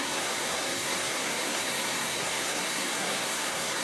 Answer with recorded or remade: remade